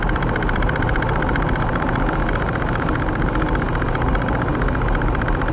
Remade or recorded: remade